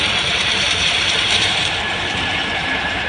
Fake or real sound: fake